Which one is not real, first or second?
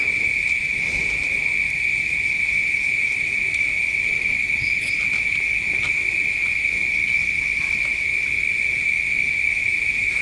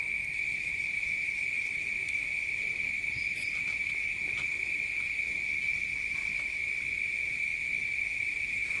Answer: second